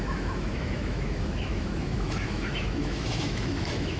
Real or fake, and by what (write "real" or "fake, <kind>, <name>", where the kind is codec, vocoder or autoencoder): fake, autoencoder, DAC-VAE